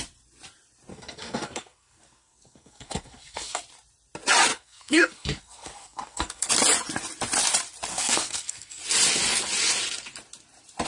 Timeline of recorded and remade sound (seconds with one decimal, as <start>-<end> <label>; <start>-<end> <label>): 0.0-0.9 recorded; 0.9-3.6 remade; 3.6-4.5 recorded; 4.5-6.5 remade; 6.5-7.9 recorded; 7.9-8.8 remade; 8.8-10.9 recorded